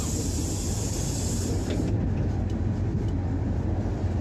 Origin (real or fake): real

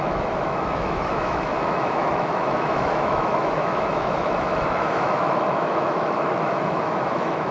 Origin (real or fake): fake